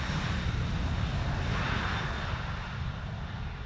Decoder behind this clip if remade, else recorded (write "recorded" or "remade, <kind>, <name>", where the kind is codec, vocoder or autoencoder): recorded